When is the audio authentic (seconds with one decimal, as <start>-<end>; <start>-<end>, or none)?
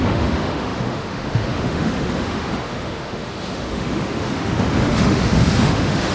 none